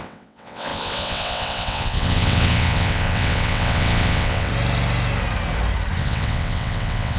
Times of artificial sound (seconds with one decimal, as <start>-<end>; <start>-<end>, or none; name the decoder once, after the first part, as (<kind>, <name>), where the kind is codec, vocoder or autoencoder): 0.0-4.5 (vocoder, WaveNeXt); 6.0-7.2